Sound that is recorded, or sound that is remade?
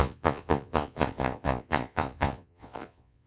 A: remade